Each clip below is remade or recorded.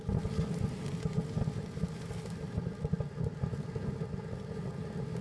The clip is recorded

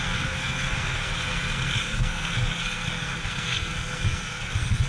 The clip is remade